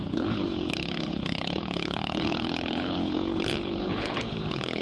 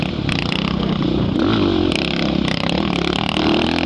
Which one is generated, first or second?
first